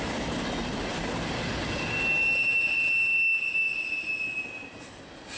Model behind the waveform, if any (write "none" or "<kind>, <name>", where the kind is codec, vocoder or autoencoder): none